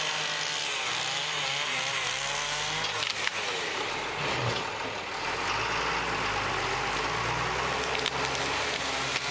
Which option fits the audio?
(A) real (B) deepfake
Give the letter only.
A